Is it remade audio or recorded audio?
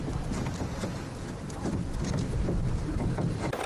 recorded